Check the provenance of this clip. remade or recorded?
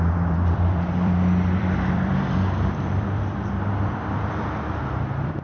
remade